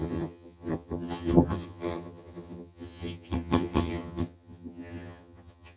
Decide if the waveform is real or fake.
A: fake